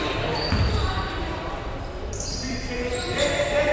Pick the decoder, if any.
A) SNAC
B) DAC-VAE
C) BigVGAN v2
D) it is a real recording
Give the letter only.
D